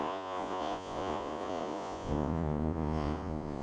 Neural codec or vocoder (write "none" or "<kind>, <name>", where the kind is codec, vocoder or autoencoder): vocoder, Vocos